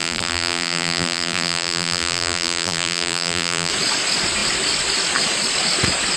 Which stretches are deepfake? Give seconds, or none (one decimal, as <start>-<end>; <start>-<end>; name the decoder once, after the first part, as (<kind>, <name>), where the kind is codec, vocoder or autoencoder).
0.0-3.7 (vocoder, BigVGAN v2)